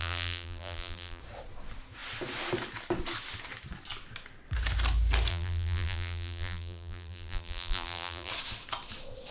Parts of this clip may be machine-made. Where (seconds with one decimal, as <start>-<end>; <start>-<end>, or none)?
0.0-1.2; 5.3-8.3